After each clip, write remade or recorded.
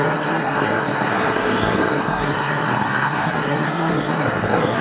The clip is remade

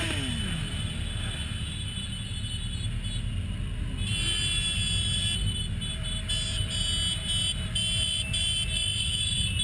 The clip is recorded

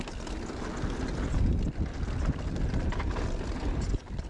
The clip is recorded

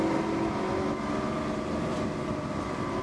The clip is recorded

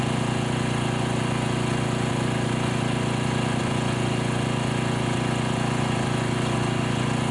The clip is remade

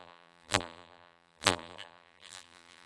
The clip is remade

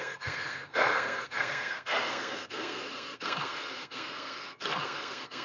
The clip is remade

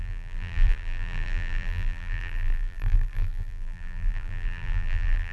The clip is remade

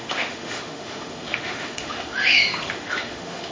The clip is remade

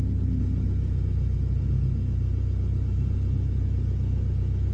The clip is recorded